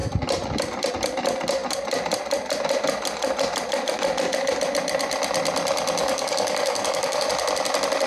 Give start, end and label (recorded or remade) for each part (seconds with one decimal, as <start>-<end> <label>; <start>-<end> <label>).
0.0-6.0 recorded; 6.0-7.3 remade; 7.3-8.1 recorded